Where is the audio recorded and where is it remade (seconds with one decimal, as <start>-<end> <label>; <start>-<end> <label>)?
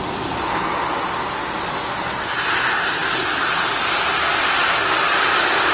0.0-5.7 recorded